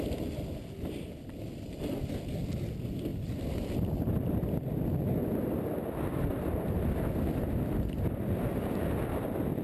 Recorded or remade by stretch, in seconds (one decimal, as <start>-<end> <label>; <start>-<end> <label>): 0.0-9.6 recorded